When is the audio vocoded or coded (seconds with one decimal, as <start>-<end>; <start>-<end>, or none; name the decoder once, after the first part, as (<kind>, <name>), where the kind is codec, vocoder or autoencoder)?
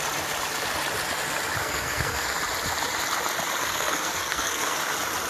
1.6-2.4 (codec, SNAC); 3.6-4.8